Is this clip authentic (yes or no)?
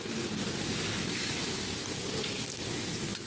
yes